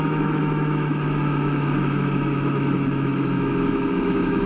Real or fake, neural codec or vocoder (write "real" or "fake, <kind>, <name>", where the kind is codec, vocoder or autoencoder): fake, autoencoder, DAC-VAE